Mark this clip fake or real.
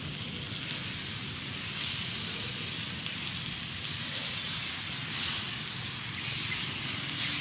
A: real